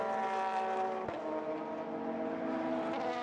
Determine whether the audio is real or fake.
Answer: real